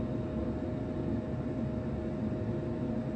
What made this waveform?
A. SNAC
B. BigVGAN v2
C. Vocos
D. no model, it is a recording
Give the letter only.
D